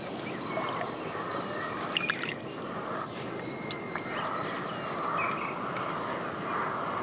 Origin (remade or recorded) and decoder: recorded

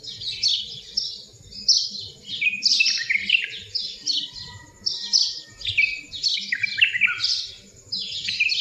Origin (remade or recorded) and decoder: recorded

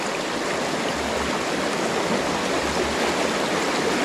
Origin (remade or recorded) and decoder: recorded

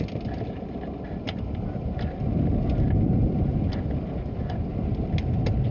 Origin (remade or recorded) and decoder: recorded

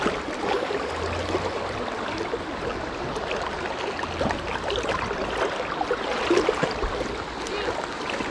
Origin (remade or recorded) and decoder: recorded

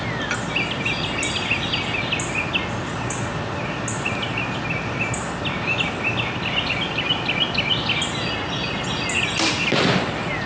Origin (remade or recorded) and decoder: recorded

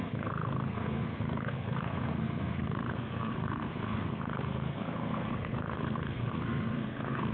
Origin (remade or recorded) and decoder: remade, codec, SNAC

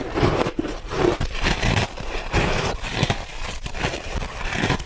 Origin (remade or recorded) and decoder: remade, vocoder, BigVGAN v2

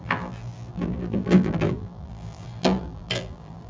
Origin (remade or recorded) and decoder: remade, vocoder, BigVGAN v2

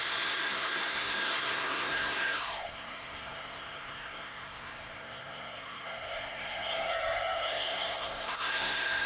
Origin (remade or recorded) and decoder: remade, codec, SNAC